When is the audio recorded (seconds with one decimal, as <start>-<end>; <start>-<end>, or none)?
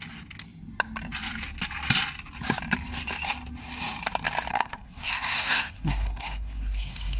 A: 0.0-4.5